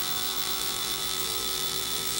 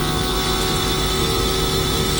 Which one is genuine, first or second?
second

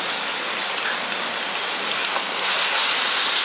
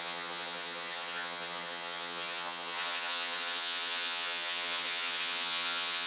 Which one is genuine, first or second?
first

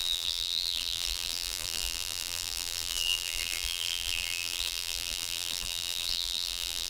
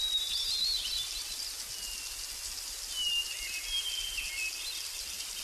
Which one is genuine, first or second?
second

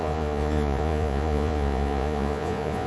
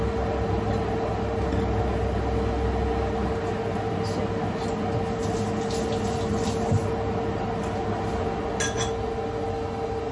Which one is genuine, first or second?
second